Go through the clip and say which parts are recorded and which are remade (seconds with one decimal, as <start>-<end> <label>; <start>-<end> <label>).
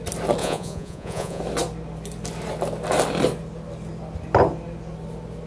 0.0-0.4 recorded; 0.4-1.4 remade; 1.4-5.5 recorded